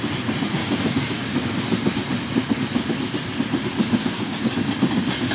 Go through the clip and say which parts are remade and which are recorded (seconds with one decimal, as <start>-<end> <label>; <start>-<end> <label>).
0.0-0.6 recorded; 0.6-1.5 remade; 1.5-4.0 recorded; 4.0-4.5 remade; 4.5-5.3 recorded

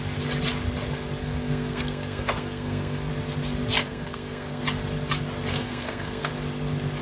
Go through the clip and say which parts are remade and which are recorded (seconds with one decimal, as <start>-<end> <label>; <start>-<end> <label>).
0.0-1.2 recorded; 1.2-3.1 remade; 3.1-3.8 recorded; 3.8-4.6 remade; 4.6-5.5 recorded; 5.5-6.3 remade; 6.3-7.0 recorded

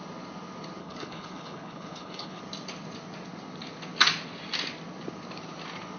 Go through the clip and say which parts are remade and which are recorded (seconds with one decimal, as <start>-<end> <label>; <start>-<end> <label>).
0.0-0.8 recorded; 0.8-2.4 remade; 2.4-6.0 recorded